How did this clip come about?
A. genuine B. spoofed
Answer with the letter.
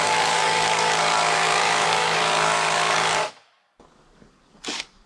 B